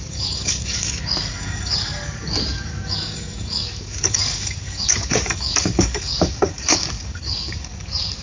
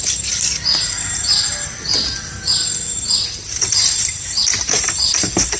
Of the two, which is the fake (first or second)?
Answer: first